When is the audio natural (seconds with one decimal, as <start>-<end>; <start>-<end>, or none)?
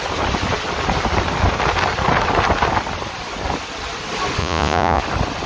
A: 0.0-4.4; 5.0-5.5